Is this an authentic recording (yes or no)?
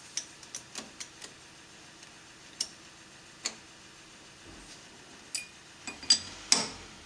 yes